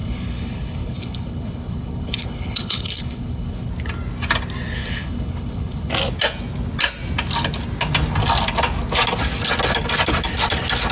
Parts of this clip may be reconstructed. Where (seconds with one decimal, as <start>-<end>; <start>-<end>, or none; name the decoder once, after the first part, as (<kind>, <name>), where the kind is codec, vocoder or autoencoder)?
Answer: 0.0-3.7 (codec, HILCodec); 4.8-5.9